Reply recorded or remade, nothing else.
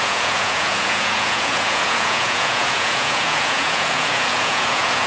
remade